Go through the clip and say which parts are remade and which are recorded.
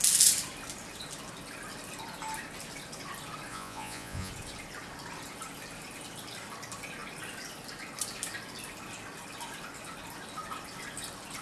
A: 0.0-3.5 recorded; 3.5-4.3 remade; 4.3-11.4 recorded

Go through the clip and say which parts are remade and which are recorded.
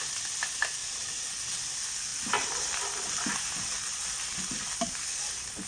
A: 0.0-0.8 recorded; 0.8-1.6 remade; 1.6-5.7 recorded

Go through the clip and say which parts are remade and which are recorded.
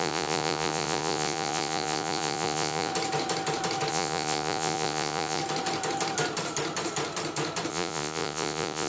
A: 0.0-2.9 remade; 2.9-3.9 recorded; 3.9-5.4 remade; 5.4-7.7 recorded; 7.7-8.9 remade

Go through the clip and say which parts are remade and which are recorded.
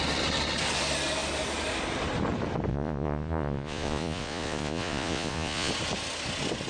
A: 0.0-2.7 recorded; 2.7-5.7 remade; 5.7-6.7 recorded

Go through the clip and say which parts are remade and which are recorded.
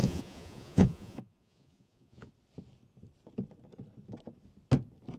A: 0.0-2.3 remade; 2.3-5.2 recorded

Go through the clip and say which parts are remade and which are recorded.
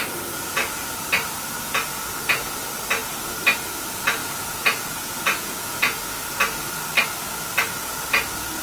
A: 0.0-4.2 recorded; 4.2-6.0 remade; 6.0-8.6 recorded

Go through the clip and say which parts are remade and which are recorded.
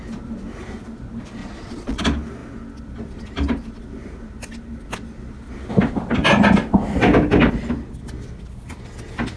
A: 0.0-1.4 recorded; 1.4-2.0 remade; 2.0-9.4 recorded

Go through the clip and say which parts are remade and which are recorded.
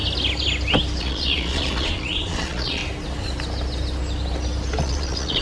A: 0.0-1.0 recorded; 1.0-2.8 remade; 2.8-4.8 recorded; 4.8-5.4 remade